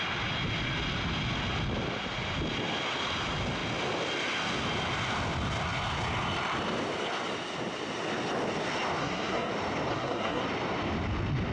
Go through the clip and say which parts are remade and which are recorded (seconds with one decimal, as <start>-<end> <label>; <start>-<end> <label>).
0.0-9.0 recorded; 9.0-9.5 remade; 9.5-9.9 recorded; 9.9-10.4 remade; 10.4-11.5 recorded